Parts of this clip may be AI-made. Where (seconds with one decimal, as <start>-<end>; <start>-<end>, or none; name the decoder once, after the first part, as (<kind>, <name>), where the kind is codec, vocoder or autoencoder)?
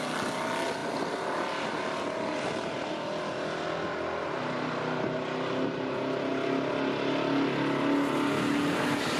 0.8-2.9 (vocoder, BigVGAN v2)